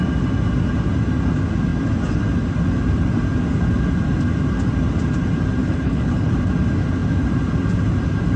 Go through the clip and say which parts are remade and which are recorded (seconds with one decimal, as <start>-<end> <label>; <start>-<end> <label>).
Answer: 0.0-5.6 recorded; 5.6-6.3 remade; 6.3-8.4 recorded